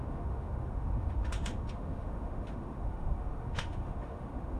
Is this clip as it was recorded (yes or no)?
no